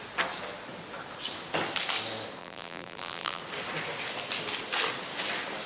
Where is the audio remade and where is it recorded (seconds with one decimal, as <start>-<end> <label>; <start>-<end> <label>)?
0.0-2.4 recorded; 2.4-3.4 remade; 3.4-5.7 recorded